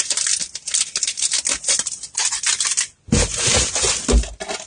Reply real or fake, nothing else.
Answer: real